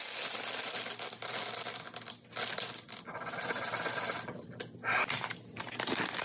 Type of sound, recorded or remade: recorded